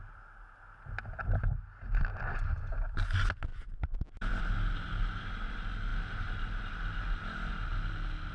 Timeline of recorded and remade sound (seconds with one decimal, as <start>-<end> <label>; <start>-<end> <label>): 0.0-8.3 recorded